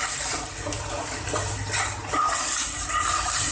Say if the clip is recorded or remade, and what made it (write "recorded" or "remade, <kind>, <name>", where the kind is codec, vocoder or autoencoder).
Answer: recorded